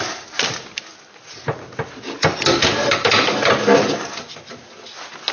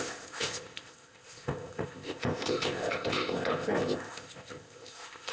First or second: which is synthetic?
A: second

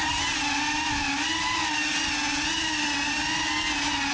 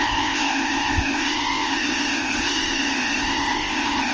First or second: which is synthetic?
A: second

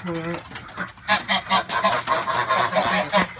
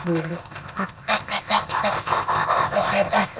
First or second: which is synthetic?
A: second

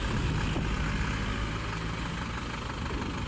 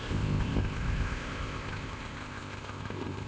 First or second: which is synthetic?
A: second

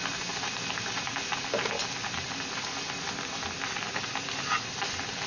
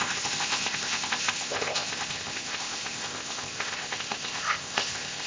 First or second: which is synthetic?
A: second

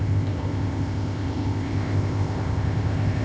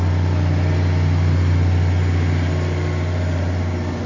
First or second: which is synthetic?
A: first